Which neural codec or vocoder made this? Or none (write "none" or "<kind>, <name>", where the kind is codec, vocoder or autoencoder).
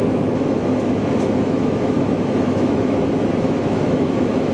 autoencoder, DAC-VAE